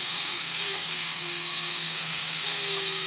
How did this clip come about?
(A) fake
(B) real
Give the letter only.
A